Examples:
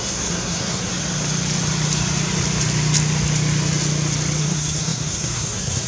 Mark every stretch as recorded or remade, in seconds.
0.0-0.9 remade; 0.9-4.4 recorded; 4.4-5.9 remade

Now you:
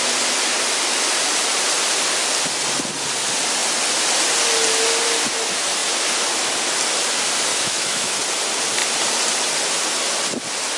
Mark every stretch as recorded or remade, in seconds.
0.0-7.5 recorded; 7.5-8.2 remade; 8.2-10.8 recorded

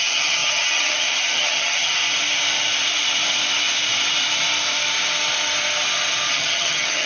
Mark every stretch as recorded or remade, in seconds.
0.0-2.0 remade; 2.0-6.3 recorded; 6.3-7.1 remade

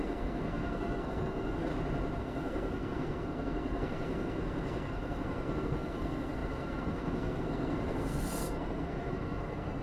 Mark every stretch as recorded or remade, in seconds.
0.0-1.7 remade; 1.7-2.2 recorded; 2.2-9.8 remade

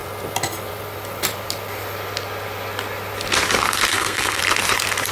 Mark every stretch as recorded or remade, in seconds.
0.0-3.9 recorded; 3.9-4.4 remade; 4.4-5.1 recorded

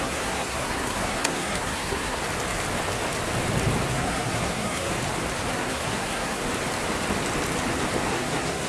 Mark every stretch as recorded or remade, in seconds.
0.0-2.2 remade; 2.2-3.9 recorded; 3.9-4.9 remade; 4.9-5.5 recorded; 5.5-6.4 remade; 6.4-8.1 recorded; 8.1-8.7 remade